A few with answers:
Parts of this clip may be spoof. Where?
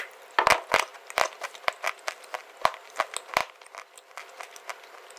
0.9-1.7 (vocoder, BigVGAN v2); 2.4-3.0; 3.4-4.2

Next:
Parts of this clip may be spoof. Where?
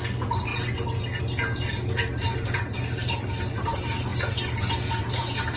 none